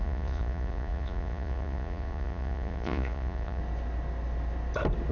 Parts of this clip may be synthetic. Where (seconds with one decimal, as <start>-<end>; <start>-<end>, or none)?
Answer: 0.0-3.6